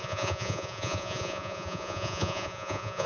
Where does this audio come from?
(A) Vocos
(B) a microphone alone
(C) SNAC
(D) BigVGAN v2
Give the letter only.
A